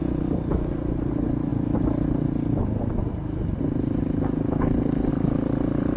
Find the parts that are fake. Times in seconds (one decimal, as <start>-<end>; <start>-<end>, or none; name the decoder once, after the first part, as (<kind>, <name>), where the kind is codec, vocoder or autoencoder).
none